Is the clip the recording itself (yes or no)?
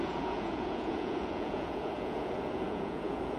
no